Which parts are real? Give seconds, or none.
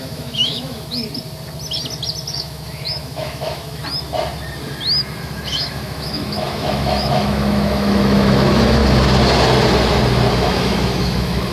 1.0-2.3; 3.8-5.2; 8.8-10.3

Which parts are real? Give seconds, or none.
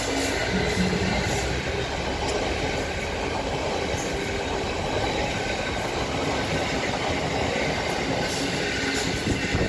0.0-9.7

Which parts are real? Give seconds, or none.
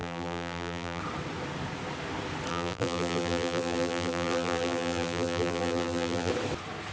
1.0-2.5; 6.3-6.9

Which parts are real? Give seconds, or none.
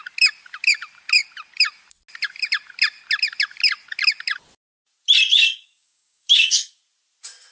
0.0-5.3; 6.8-7.5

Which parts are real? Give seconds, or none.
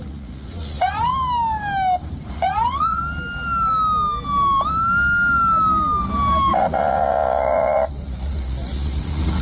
1.1-2.3; 3.0-6.5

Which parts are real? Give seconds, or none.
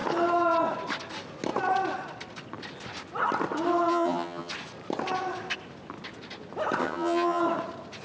0.0-3.9; 4.5-6.8; 7.4-8.0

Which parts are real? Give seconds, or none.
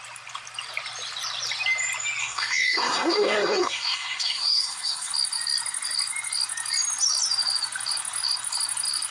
0.0-2.2; 5.1-9.1